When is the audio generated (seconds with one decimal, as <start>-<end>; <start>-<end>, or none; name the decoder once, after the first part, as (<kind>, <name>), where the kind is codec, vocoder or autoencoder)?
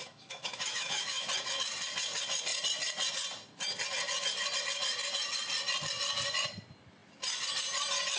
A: 0.0-1.3 (autoencoder, DAC-VAE)